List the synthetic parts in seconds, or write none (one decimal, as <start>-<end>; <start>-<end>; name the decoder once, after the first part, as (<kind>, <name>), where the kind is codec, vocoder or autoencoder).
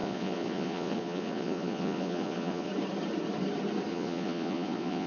0.0-2.7 (vocoder, Vocos); 3.9-5.1